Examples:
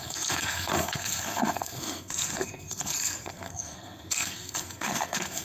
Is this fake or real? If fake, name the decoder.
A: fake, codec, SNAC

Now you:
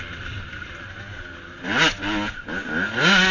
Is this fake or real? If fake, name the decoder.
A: real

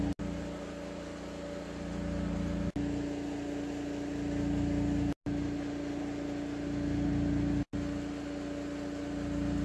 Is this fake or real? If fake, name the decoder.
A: real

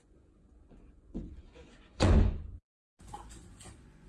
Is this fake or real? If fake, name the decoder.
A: fake, vocoder, Vocos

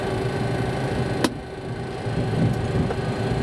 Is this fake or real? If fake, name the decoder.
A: real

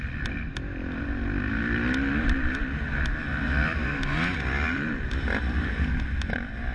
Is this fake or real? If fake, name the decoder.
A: real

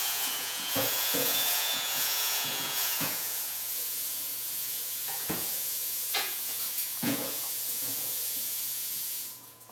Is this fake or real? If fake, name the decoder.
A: fake, vocoder, Vocos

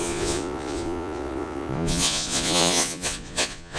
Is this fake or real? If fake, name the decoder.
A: fake, vocoder, Vocos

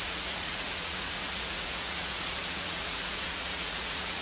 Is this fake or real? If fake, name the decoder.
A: fake, vocoder, Vocos